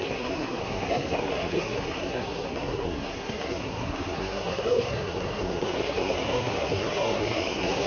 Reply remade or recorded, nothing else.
remade